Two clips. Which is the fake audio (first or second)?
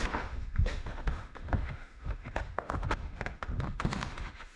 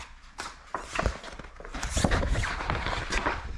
first